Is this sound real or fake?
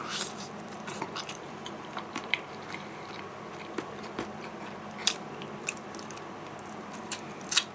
fake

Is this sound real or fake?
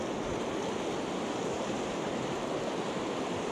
real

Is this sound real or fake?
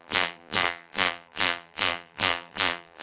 fake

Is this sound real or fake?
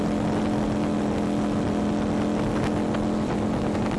real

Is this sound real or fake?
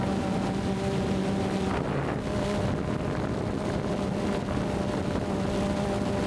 real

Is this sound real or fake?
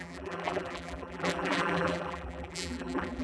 fake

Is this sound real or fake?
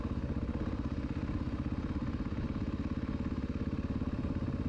real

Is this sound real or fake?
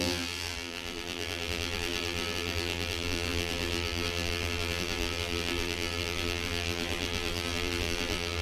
fake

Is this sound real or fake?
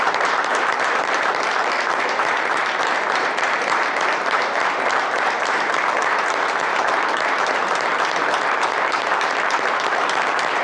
fake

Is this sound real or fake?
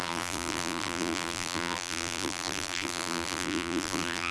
fake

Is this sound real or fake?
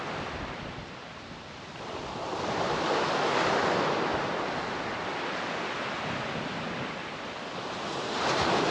real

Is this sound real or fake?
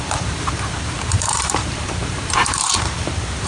fake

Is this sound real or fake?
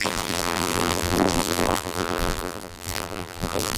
fake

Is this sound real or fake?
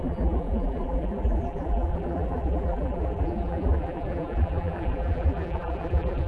fake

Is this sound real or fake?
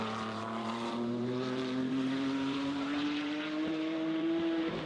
fake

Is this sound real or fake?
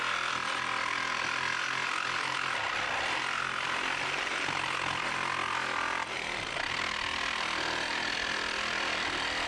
real